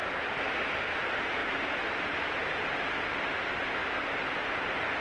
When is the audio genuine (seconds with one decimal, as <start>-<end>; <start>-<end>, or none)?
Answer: 0.0-1.4; 2.6-3.8; 4.5-5.0